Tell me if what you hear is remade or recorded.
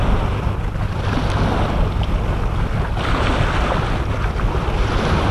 recorded